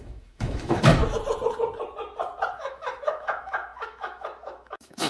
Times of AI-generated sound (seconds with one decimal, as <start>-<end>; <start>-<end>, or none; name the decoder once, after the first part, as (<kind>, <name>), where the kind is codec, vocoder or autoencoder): 0.0-1.0 (autoencoder, DAC-VAE); 2.5-5.1